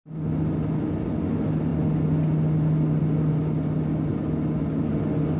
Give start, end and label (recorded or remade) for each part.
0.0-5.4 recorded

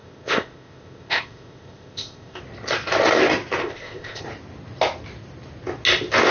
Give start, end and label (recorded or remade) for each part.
0.0-2.4 remade; 2.4-3.6 recorded; 3.6-4.2 remade; 4.2-6.3 recorded

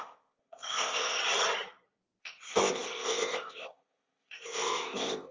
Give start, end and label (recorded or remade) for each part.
0.0-1.2 remade; 1.2-2.2 recorded; 2.2-5.3 remade

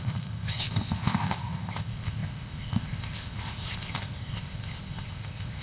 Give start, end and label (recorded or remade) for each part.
0.0-5.6 remade

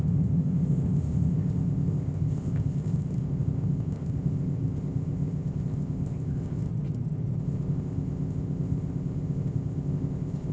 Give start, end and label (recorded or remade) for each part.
0.0-6.7 remade; 6.7-7.4 recorded; 7.4-10.5 remade

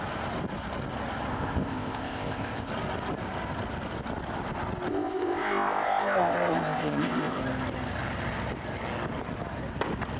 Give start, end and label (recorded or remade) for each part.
0.0-1.3 recorded; 1.3-2.7 remade; 2.7-4.9 recorded; 4.9-7.4 remade; 7.4-10.2 recorded